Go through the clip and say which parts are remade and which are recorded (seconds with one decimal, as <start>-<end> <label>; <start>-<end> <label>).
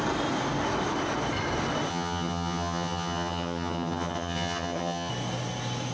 0.0-1.9 recorded; 1.9-5.1 remade; 5.1-5.9 recorded